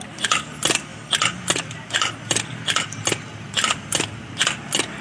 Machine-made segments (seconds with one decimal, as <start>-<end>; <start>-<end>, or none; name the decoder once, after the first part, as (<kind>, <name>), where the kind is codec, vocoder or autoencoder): none